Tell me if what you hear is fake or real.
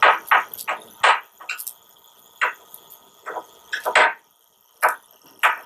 real